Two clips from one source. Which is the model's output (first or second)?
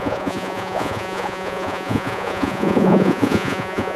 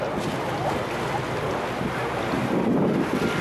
first